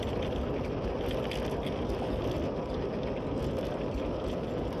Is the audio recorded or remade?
recorded